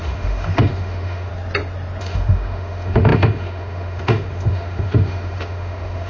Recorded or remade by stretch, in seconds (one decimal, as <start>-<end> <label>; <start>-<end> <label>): 0.0-1.3 remade; 1.3-2.0 recorded; 2.0-6.1 remade